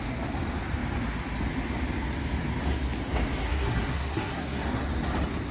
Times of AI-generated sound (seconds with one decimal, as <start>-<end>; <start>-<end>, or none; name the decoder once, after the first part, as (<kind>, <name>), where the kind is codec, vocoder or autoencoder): 3.4-4.8 (codec, SNAC)